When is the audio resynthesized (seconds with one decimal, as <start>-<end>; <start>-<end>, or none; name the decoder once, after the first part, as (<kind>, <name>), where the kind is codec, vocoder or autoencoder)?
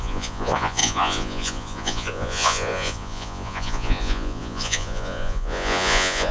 0.0-6.3 (vocoder, Vocos)